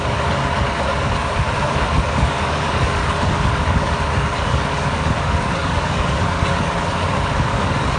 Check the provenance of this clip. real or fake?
fake